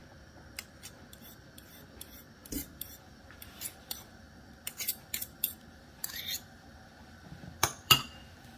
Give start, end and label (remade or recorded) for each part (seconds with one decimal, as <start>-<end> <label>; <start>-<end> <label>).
0.0-0.7 recorded; 0.7-8.6 remade